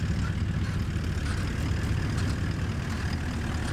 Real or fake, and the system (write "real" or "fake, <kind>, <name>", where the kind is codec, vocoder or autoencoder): real